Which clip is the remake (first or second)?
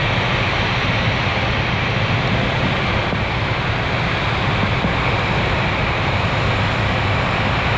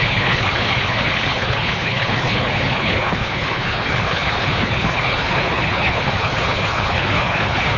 second